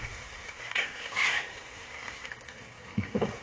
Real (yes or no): no